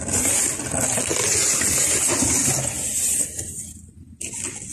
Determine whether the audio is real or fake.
real